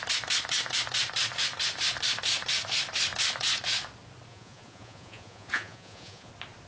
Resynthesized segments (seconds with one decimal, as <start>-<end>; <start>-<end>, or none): 4.3-6.3